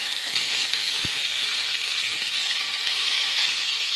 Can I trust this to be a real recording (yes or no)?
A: no